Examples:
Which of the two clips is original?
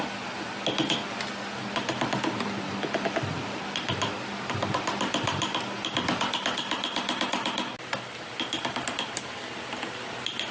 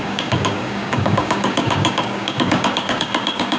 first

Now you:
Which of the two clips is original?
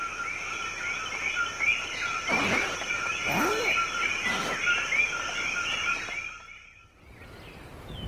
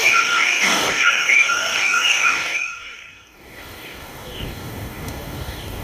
first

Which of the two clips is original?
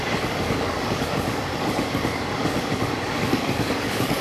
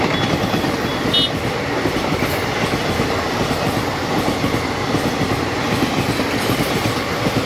second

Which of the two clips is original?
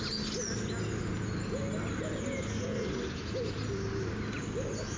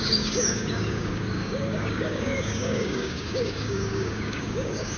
first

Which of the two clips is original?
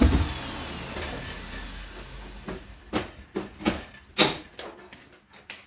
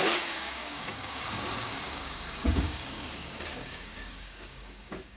first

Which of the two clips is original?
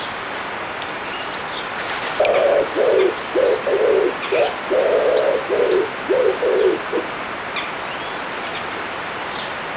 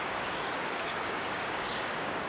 first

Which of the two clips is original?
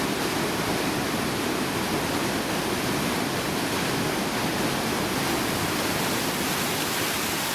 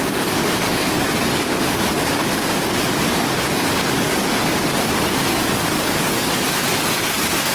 first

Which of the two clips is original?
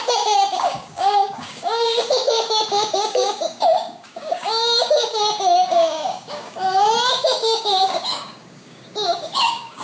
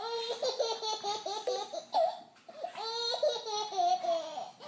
second